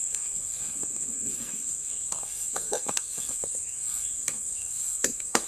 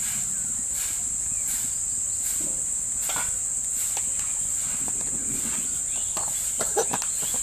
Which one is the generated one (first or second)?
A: first